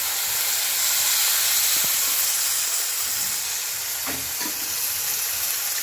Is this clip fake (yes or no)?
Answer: no